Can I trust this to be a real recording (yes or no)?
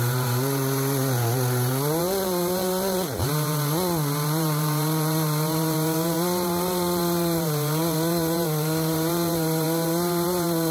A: no